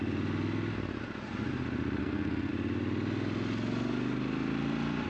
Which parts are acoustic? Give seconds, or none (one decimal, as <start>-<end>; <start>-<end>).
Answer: 0.0-2.0; 2.5-5.1